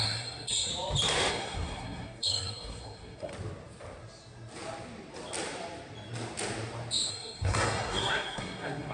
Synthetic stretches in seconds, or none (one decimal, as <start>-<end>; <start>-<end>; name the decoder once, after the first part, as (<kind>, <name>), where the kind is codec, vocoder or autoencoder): 0.0-0.7 (codec, SNAC); 1.3-3.3; 7.1-8.9